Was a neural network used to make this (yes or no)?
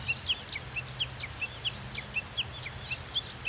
no